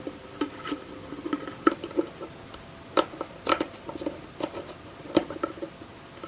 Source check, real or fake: real